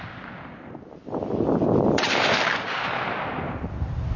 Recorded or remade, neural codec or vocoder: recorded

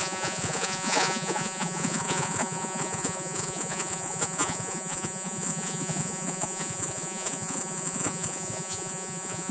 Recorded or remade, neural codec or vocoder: remade, vocoder, Vocos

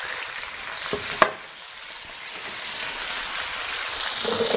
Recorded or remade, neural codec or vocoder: recorded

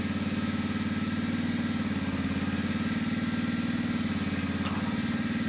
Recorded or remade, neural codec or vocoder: recorded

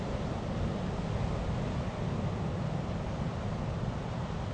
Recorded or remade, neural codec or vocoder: recorded